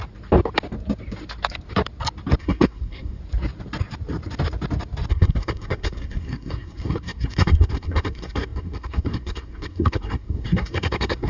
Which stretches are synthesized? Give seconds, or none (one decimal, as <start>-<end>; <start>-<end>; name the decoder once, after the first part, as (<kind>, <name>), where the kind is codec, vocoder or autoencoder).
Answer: 2.4-3.2 (codec, SNAC); 5.1-11.3